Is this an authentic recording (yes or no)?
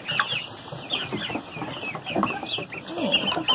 yes